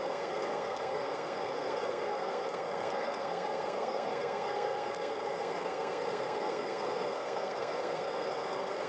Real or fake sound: fake